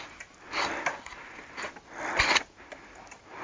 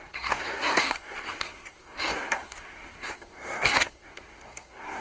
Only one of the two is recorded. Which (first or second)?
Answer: first